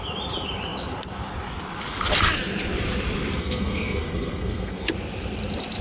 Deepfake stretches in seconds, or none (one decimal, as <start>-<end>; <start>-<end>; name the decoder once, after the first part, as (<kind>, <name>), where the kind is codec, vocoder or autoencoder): 3.4-4.9 (codec, SNAC)